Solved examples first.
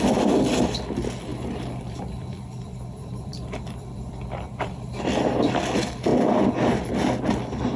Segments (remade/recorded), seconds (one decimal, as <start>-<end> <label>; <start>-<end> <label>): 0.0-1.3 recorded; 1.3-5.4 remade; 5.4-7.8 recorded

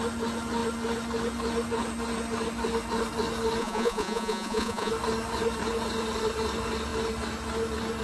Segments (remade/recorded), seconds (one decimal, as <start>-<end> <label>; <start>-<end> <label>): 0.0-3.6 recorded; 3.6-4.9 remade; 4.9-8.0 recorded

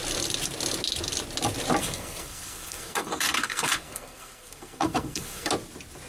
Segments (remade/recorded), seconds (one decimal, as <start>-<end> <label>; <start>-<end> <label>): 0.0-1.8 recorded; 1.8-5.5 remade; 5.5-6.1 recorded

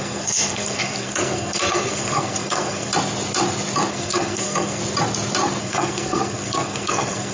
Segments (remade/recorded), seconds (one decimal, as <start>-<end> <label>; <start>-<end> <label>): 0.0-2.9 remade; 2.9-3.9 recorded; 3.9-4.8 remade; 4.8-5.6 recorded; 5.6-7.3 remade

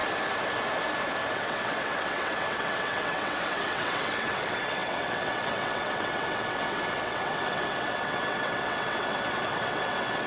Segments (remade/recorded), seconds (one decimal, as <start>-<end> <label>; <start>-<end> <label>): 0.0-1.3 recorded; 1.3-10.3 remade

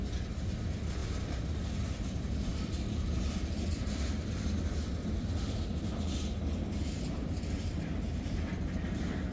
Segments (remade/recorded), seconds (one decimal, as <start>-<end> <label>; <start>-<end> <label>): 0.0-9.3 recorded

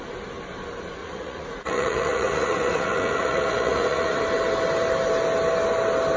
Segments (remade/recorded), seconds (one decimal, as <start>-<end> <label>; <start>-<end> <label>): 0.0-1.0 recorded; 1.0-4.2 remade; 4.2-6.2 recorded

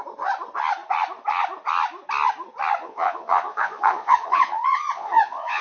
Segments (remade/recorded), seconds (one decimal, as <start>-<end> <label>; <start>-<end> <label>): 0.0-2.8 recorded; 2.8-5.6 remade